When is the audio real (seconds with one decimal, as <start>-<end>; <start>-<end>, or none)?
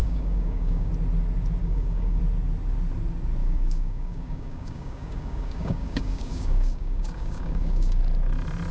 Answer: 0.9-1.6; 2.2-3.4; 8.0-8.7